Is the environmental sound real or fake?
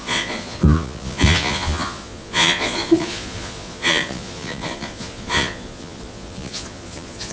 fake